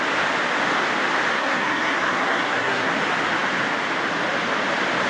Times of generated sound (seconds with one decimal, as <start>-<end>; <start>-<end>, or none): 1.3-2.9